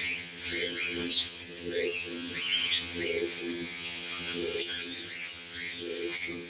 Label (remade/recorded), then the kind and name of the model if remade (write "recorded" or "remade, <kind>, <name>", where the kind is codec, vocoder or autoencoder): remade, vocoder, HiFi-GAN